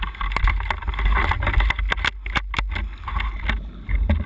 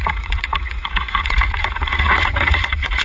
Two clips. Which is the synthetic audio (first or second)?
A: second